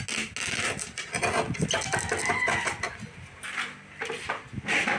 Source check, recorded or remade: recorded